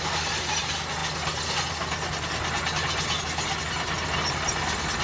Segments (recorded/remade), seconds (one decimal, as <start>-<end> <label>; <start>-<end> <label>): 0.0-5.0 recorded